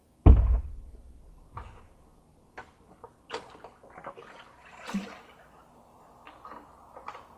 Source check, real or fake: real